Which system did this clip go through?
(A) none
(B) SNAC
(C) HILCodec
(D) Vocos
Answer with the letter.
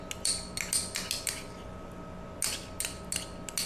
A